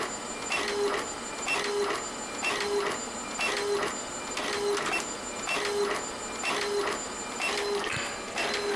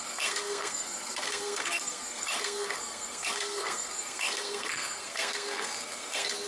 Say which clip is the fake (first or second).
second